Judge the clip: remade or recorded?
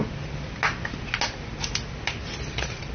recorded